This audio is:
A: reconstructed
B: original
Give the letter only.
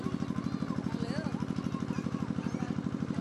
A